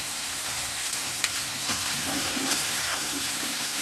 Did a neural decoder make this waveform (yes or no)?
yes